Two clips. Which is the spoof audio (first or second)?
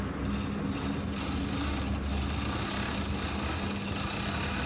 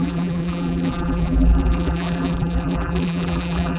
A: second